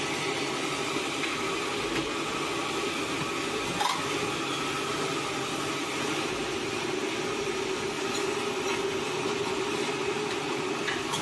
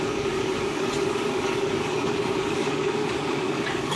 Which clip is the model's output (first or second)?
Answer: second